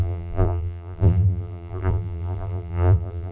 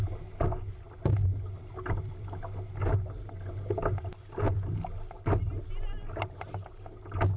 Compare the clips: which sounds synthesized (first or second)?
first